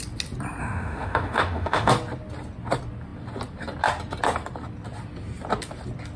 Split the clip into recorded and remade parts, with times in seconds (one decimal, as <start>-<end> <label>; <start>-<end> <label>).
0.0-0.6 recorded; 0.6-1.9 remade; 1.9-6.2 recorded